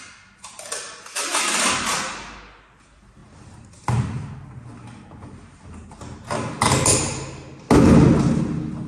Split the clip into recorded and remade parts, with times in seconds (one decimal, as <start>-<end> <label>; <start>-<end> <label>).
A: 0.0-8.9 recorded